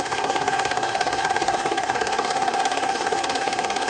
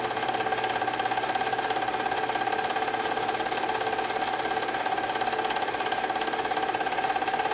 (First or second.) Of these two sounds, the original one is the second